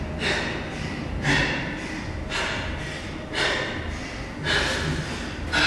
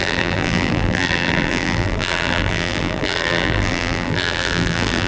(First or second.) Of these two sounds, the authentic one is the first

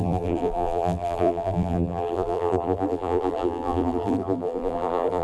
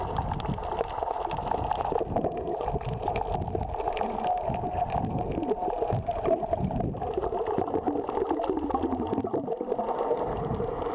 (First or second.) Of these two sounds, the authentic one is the second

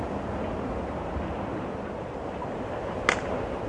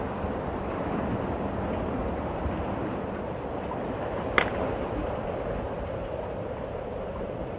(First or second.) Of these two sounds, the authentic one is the first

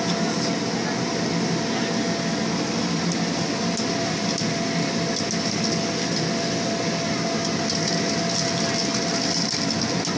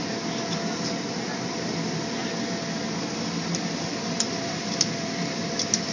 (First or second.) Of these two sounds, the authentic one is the first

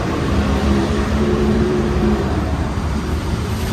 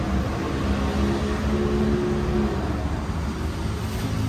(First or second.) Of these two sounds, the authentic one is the second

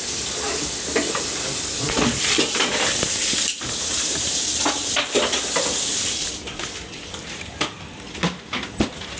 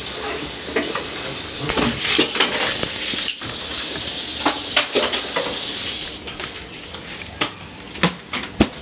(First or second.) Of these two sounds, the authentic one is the second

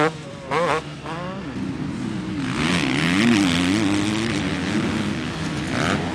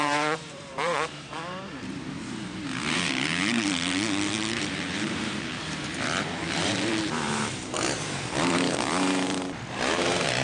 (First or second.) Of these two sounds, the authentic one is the first